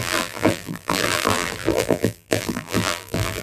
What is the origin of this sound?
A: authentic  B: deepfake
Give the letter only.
B